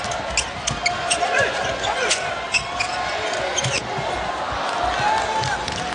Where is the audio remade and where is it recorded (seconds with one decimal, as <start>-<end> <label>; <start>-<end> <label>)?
0.0-1.0 recorded; 1.0-2.3 remade; 2.3-3.5 recorded; 3.5-4.0 remade; 4.0-5.9 recorded